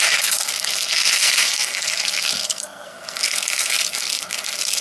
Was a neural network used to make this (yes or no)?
yes